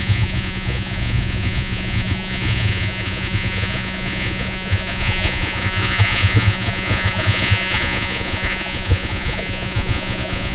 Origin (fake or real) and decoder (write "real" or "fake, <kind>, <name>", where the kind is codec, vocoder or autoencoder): fake, vocoder, Vocos